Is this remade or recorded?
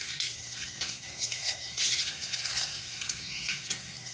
remade